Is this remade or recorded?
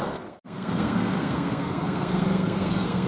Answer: remade